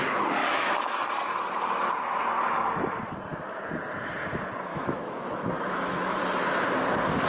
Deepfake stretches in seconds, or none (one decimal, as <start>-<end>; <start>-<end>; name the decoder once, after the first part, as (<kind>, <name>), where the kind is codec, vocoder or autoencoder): 0.4-1.0 (autoencoder, DAC-VAE); 4.7-6.2